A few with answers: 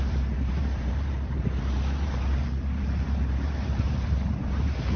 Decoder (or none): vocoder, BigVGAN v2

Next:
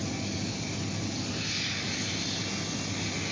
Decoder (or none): none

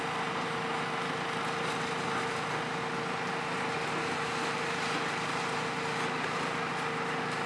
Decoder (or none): none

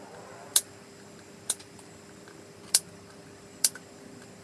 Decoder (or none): none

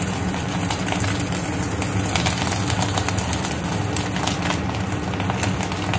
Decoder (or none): none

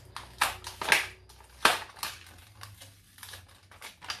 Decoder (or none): none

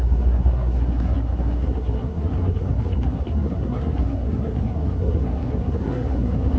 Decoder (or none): codec, SNAC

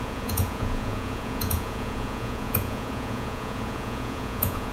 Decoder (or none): vocoder, Vocos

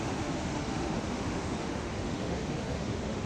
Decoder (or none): autoencoder, DAC-VAE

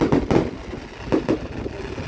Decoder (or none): none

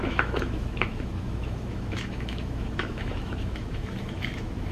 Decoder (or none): autoencoder, DAC-VAE